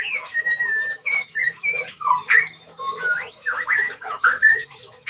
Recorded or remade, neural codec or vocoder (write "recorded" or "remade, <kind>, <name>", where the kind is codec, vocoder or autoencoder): remade, autoencoder, DAC-VAE